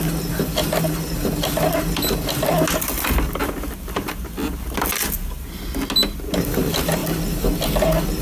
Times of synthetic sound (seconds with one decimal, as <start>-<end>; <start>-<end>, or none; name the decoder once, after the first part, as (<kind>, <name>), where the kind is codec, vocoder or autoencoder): none